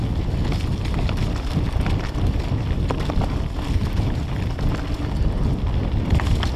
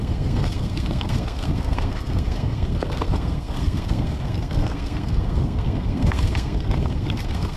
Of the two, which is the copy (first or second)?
second